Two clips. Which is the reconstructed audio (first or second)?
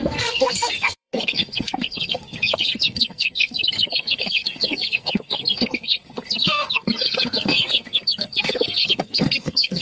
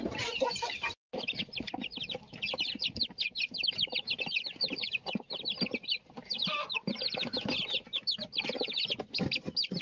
first